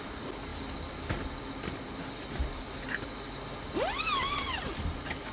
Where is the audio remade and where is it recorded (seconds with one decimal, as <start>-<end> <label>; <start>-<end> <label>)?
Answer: 0.0-5.3 recorded